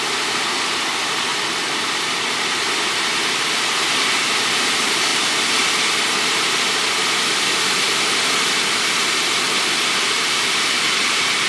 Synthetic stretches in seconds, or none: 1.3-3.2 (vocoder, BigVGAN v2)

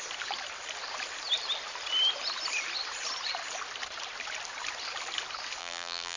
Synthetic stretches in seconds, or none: 5.6-6.2 (vocoder, BigVGAN v2)

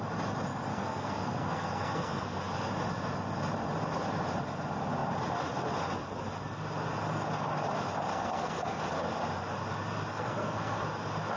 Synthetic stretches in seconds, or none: 0.7-2.4 (codec, SNAC); 8.1-8.8; 10.1-10.8

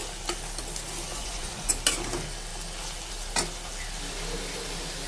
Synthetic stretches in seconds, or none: 1.1-1.7 (vocoder, Vocos)

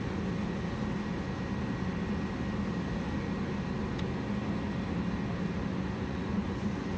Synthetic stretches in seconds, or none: 5.7-7.0 (vocoder, Vocos)

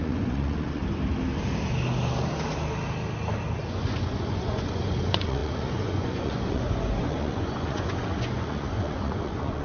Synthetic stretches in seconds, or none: 0.0-0.8 (vocoder, Vocos); 3.6-9.6

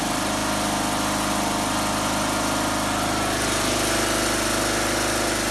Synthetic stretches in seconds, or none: none

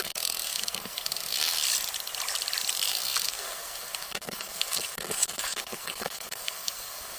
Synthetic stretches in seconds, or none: 0.0-1.6 (codec, SNAC); 2.9-7.2